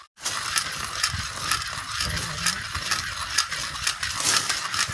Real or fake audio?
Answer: real